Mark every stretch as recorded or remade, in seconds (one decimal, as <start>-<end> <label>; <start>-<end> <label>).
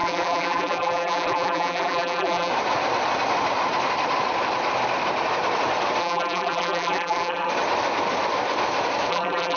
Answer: 0.0-2.5 remade; 2.5-6.0 recorded; 6.0-7.5 remade; 7.5-9.1 recorded; 9.1-9.6 remade